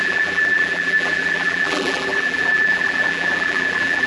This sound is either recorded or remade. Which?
remade